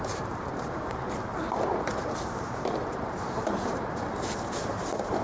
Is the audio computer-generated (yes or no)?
yes